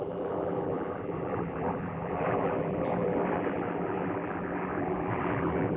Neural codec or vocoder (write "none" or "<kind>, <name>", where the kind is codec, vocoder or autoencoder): vocoder, BigVGAN v2